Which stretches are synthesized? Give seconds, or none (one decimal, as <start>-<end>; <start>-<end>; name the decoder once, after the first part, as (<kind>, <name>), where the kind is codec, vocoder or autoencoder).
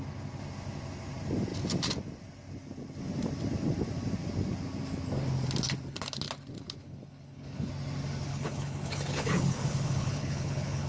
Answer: 6.8-7.7 (codec, HILCodec); 8.3-10.9